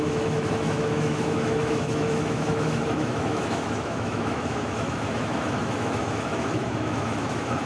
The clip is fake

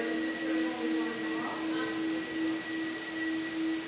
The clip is real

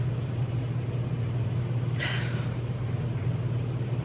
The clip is real